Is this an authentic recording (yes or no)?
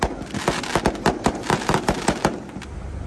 yes